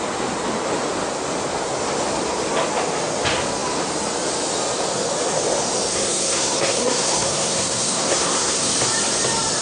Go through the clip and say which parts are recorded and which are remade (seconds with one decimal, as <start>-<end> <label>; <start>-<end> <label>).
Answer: 0.0-5.9 recorded; 5.9-8.7 remade; 8.7-9.6 recorded